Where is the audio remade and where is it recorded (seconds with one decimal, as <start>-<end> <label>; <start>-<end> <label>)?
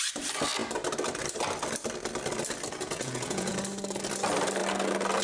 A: 0.0-2.7 recorded; 2.7-3.6 remade; 3.6-5.2 recorded